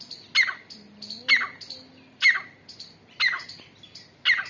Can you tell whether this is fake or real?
real